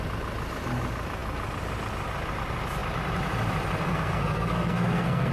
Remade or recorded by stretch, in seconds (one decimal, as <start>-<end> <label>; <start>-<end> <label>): 0.0-3.9 recorded; 3.9-5.3 remade